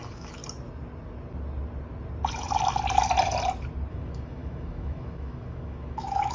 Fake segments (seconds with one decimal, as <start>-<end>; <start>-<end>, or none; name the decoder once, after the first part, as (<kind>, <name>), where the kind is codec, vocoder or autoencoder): 0.0-0.4 (autoencoder, DAC-VAE); 3.9-6.3